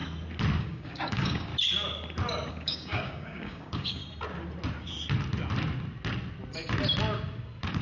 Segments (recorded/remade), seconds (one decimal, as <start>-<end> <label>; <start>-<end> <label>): 0.0-0.6 recorded; 0.6-1.5 remade; 1.5-2.5 recorded; 2.5-4.0 remade; 4.0-7.8 recorded